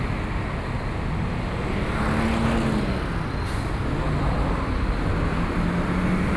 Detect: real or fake real